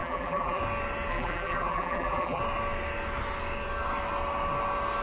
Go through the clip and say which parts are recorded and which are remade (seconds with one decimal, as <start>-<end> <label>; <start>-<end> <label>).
0.0-0.6 remade; 0.6-1.1 recorded; 1.1-2.4 remade; 2.4-5.0 recorded